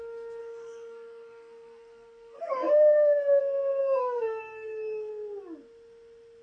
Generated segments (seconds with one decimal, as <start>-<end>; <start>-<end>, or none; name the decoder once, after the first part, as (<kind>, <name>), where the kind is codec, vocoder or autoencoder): 0.4-3.4 (codec, SNAC); 3.8-5.1

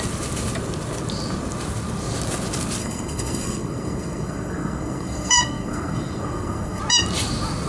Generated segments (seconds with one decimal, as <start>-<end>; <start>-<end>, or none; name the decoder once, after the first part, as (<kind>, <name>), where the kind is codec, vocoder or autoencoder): 2.8-6.8 (codec, SNAC)

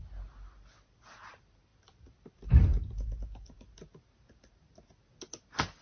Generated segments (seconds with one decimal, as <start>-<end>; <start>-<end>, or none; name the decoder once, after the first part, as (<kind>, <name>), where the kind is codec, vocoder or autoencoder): none

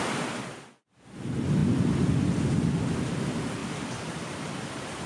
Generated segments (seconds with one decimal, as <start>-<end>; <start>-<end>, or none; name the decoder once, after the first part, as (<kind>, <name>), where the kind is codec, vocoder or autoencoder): 3.6-5.1 (vocoder, BigVGAN v2)

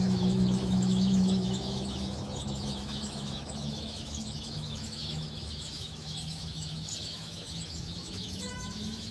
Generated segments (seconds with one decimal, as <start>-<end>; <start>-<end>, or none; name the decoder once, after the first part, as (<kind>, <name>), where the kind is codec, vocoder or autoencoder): 0.0-9.1 (autoencoder, DAC-VAE)